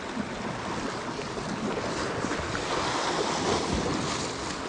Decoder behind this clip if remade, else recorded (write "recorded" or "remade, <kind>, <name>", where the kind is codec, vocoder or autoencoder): recorded